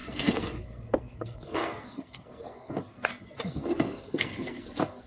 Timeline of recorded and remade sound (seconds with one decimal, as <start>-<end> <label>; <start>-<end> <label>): 0.0-5.1 remade